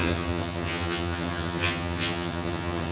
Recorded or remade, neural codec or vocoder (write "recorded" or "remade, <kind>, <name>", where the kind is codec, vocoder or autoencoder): remade, vocoder, HiFi-GAN